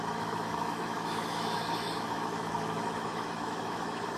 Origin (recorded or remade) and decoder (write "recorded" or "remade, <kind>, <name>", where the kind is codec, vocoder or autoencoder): remade, autoencoder, DAC-VAE